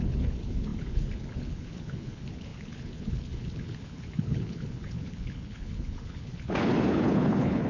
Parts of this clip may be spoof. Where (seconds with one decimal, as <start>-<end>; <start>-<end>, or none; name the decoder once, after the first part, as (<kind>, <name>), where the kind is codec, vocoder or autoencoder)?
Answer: 0.0-7.7 (codec, HILCodec)